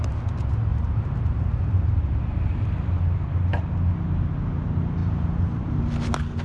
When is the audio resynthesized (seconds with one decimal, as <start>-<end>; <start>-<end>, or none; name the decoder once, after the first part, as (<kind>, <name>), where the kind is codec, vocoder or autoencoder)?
0.7-2.1 (vocoder, BigVGAN v2); 5.0-5.8